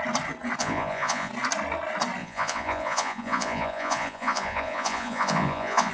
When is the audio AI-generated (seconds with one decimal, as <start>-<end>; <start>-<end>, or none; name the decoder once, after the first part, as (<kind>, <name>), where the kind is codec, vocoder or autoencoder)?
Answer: 0.6-1.3 (vocoder, Vocos); 2.2-5.9